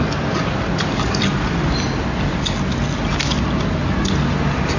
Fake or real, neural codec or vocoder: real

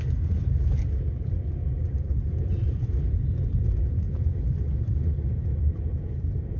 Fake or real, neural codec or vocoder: real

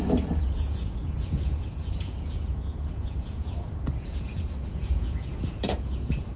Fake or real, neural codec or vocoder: fake, vocoder, Vocos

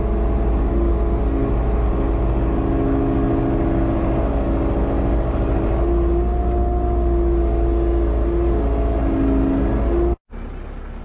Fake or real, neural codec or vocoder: real